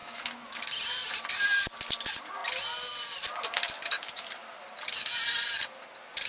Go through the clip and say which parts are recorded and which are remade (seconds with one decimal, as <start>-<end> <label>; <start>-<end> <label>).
0.0-0.6 remade; 0.6-6.3 recorded